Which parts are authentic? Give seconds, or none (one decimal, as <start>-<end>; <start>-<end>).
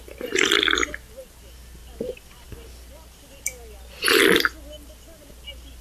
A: 0.0-5.8